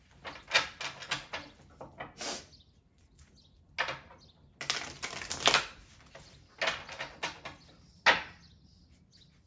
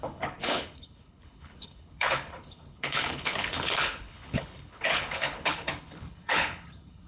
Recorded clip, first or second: first